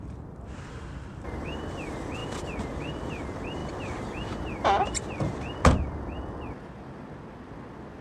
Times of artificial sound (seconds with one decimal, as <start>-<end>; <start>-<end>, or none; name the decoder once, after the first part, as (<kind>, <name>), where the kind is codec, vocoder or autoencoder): none